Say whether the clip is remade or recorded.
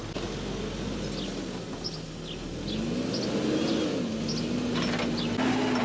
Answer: recorded